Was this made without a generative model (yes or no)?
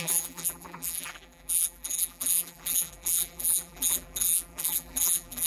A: no